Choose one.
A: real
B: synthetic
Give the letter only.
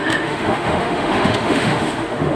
B